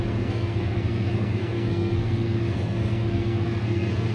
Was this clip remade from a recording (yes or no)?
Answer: yes